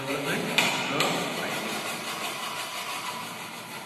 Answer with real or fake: real